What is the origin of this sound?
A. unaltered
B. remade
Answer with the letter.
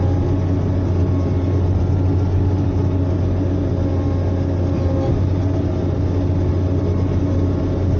A